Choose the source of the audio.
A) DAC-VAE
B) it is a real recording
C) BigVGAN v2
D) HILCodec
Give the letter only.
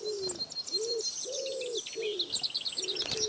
B